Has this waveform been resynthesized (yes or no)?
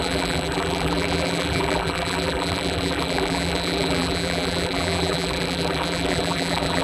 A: yes